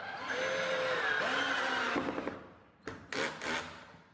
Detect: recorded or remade recorded